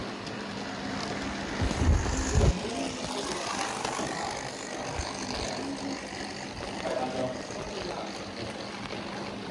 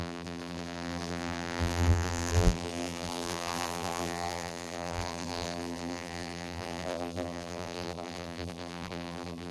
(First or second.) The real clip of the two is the first